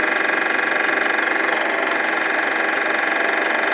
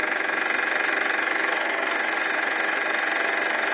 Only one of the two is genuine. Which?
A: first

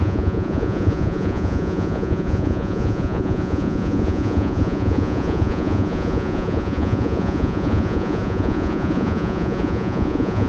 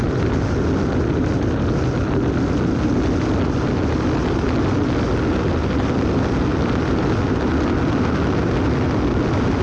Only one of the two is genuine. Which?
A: second